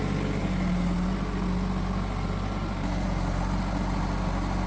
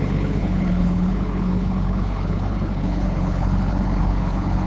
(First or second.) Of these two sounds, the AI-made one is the second